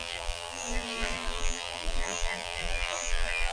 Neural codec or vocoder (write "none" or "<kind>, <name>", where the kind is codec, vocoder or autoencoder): vocoder, BigVGAN v2